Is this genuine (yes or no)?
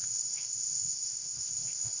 no